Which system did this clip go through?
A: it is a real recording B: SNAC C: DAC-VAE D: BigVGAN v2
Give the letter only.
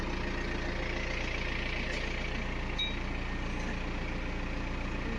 A